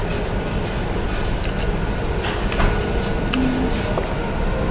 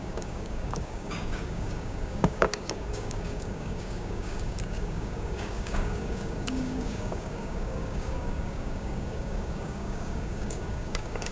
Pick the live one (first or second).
first